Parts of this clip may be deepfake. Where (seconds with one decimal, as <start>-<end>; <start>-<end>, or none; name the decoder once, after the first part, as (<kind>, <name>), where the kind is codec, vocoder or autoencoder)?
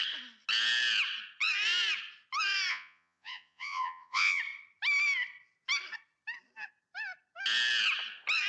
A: 2.7-4.4 (vocoder, Vocos)